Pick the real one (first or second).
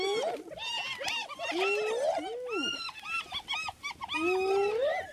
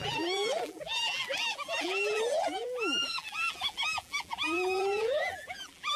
first